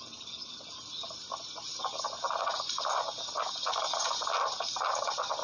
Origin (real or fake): real